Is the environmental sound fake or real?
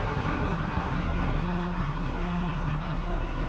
fake